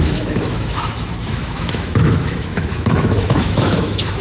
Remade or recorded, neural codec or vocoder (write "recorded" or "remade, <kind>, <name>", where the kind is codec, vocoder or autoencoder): remade, autoencoder, DAC-VAE